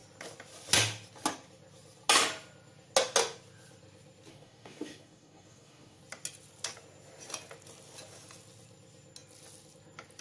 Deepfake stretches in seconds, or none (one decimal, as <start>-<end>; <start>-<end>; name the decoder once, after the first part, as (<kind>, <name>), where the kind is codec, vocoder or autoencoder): 4.3-6.0 (codec, DAC)